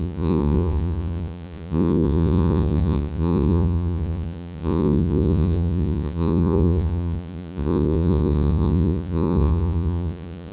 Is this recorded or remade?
remade